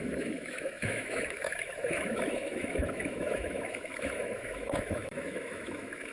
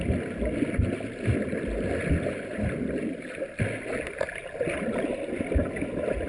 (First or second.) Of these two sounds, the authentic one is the second